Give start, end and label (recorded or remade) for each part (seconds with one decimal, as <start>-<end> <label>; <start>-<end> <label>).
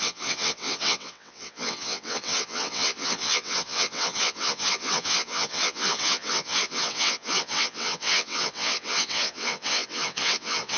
0.0-10.8 remade